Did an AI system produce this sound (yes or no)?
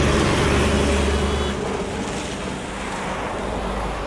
no